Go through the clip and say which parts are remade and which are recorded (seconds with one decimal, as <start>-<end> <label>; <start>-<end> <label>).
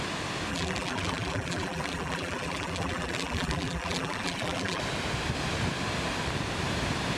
0.0-0.5 recorded; 0.5-4.8 remade; 4.8-7.2 recorded